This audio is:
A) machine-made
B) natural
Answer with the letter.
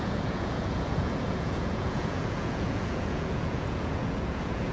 A